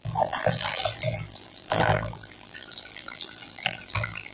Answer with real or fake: fake